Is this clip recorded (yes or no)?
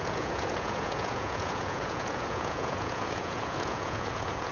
no